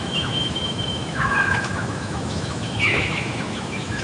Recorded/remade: remade